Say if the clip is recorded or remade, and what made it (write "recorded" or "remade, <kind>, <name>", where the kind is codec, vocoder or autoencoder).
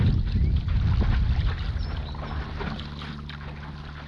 recorded